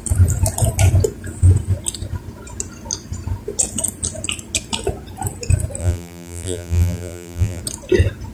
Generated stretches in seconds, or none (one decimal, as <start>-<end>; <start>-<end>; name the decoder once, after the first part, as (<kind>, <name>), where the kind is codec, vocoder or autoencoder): 5.8-7.6 (vocoder, BigVGAN v2)